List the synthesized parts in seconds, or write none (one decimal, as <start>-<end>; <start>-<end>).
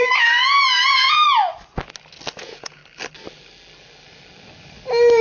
0.0-1.2; 2.4-2.8